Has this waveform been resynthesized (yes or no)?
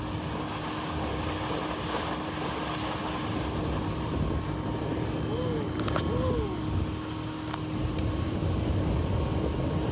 no